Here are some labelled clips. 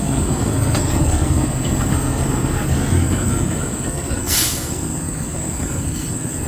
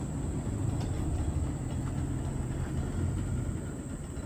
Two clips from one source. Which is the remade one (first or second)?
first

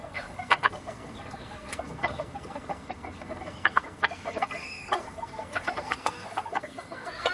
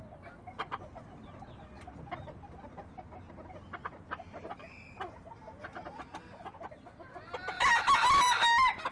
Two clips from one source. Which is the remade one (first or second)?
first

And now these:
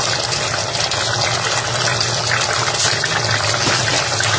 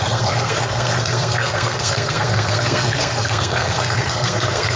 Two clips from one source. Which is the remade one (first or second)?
second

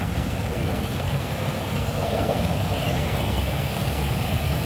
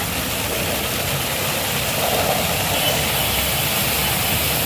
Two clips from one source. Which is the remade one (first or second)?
first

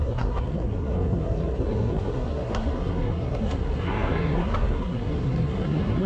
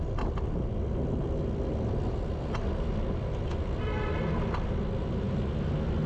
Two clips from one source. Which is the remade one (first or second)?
first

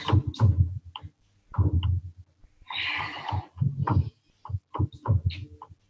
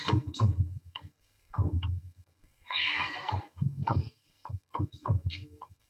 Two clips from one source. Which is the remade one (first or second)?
second